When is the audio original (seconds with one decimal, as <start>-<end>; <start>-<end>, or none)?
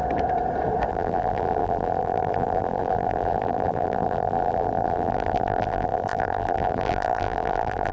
0.0-0.9